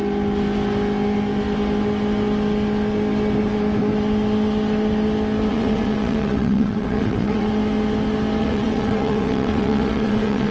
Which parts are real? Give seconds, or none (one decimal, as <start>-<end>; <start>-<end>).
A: 0.0-5.5; 7.5-8.4

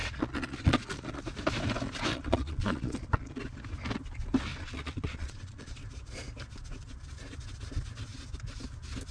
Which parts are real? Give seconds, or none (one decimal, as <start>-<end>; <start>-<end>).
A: 1.2-2.1; 3.4-4.5; 5.8-9.1

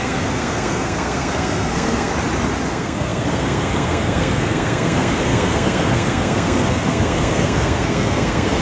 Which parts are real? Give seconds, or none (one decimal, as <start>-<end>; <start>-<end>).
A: 2.1-2.7